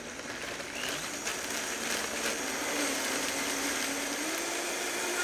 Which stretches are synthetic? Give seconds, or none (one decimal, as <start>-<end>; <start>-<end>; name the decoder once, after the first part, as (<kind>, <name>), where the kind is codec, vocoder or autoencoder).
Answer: none